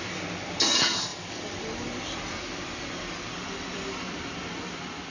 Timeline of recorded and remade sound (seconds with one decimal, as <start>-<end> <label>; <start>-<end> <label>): 0.0-1.1 recorded; 1.1-4.2 remade; 4.2-5.1 recorded